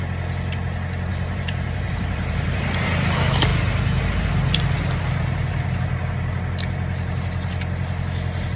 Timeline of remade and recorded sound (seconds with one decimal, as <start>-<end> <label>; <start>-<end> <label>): 0.0-1.1 recorded; 1.1-2.6 remade; 2.6-8.6 recorded